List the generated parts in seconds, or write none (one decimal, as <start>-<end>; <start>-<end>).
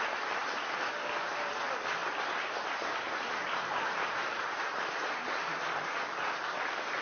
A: 2.0-6.1